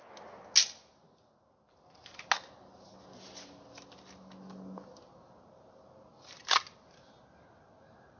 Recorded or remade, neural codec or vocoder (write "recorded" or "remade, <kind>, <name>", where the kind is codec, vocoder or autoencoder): recorded